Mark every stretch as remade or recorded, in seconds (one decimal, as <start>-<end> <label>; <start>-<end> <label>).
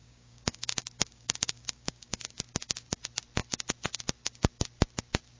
0.0-2.4 remade; 2.4-5.4 recorded